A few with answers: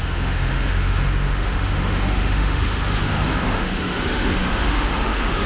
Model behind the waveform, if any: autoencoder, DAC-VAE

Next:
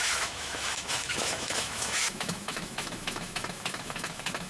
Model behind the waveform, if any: autoencoder, DAC-VAE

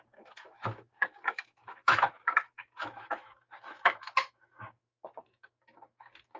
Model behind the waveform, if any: autoencoder, DAC-VAE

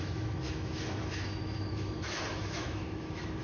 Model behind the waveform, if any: autoencoder, DAC-VAE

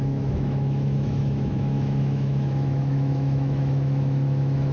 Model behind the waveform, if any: autoencoder, DAC-VAE